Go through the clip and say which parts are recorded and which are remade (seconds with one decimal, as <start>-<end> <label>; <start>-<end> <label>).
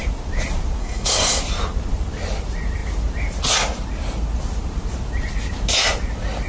0.0-0.8 recorded; 0.8-1.4 remade; 1.4-6.5 recorded